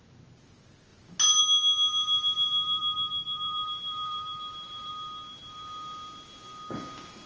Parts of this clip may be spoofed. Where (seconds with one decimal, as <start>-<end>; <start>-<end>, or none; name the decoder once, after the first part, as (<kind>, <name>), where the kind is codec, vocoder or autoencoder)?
1.9-4.9 (vocoder, BigVGAN v2)